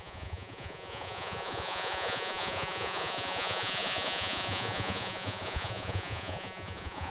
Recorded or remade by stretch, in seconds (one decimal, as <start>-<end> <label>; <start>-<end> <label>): 0.0-7.1 remade